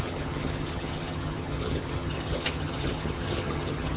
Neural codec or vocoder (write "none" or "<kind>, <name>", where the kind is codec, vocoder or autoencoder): vocoder, HiFi-GAN